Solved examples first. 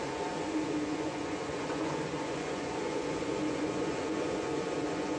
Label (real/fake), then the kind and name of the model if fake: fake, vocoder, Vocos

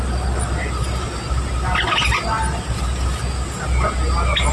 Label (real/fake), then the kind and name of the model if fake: real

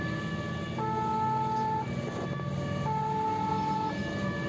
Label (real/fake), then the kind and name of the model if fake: real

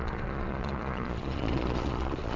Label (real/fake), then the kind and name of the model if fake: fake, vocoder, Vocos